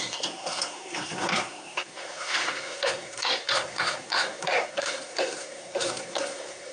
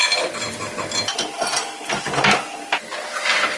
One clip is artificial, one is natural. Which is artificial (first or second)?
first